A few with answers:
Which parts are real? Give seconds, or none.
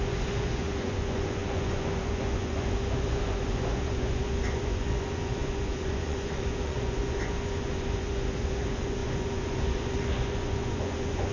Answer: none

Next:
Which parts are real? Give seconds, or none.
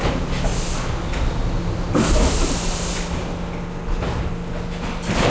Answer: 0.0-5.3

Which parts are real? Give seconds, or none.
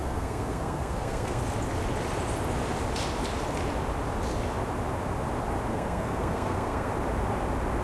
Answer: 1.4-5.7; 6.9-7.8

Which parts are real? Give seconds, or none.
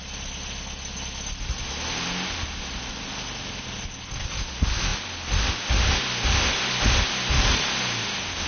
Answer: 0.0-8.5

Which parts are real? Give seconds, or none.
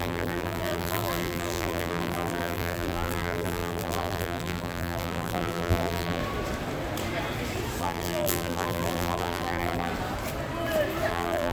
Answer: 6.2-7.8; 9.9-11.1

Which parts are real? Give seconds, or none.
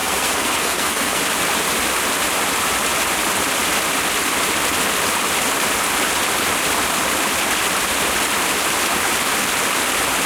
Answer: 1.2-10.3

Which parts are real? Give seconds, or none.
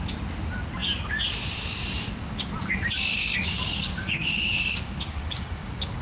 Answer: 0.0-3.1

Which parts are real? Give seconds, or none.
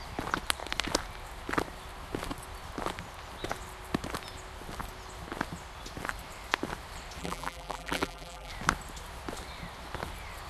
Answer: 0.0-7.2; 8.5-10.5